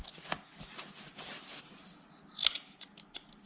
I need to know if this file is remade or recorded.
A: recorded